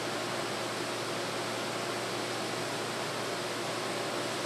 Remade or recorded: recorded